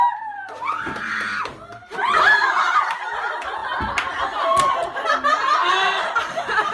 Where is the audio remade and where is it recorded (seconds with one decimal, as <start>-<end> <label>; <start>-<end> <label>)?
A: 0.0-6.7 recorded